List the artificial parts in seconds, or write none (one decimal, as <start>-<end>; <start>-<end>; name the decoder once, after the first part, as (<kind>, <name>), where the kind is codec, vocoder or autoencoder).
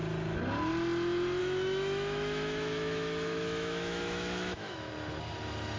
1.4-4.9 (autoencoder, DAC-VAE)